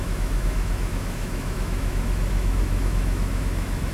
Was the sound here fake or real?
fake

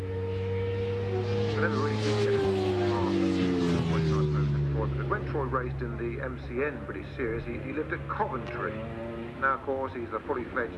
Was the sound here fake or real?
real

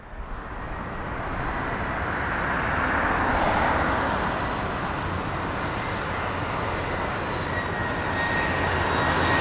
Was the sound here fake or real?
real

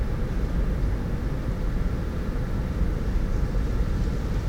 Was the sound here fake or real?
real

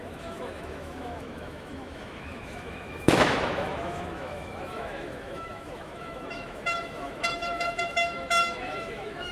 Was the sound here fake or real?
fake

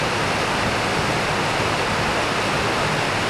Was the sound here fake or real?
real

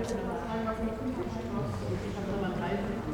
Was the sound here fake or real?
real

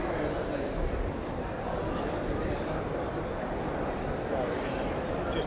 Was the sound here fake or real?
real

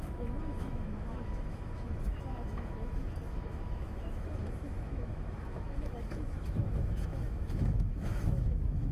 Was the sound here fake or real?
fake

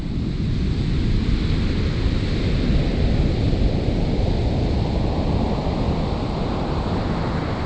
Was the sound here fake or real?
real